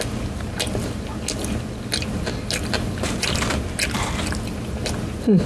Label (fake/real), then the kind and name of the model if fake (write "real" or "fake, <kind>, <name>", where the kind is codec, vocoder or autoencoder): real